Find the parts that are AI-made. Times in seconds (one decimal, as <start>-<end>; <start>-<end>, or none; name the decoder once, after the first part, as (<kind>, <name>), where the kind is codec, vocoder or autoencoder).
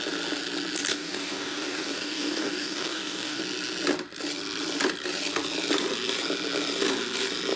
0.9-3.4 (codec, DAC)